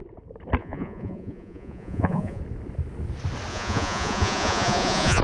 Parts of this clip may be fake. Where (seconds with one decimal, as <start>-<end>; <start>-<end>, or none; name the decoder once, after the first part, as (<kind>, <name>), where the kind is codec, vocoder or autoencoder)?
0.6-2.4 (vocoder, Vocos); 3.5-5.2